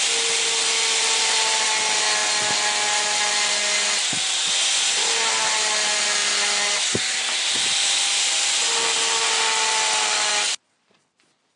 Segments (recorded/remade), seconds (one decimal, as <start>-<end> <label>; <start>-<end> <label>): 0.0-11.6 recorded